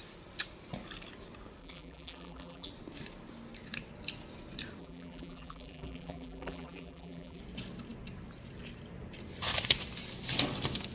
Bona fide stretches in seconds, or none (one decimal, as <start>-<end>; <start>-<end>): 0.0-1.6; 2.7-4.8; 7.4-10.9